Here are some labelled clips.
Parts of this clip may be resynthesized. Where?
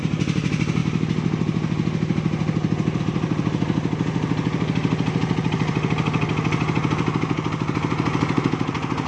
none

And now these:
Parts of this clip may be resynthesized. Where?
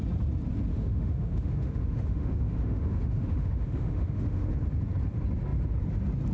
0.7-4.5 (autoencoder, DAC-VAE)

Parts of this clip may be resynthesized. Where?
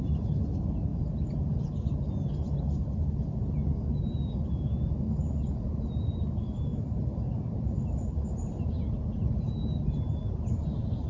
none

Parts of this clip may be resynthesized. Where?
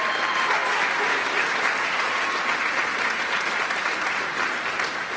none